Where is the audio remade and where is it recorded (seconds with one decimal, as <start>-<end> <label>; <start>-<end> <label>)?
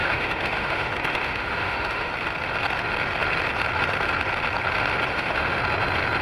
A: 0.0-2.1 remade; 2.1-5.1 recorded; 5.1-5.6 remade; 5.6-6.2 recorded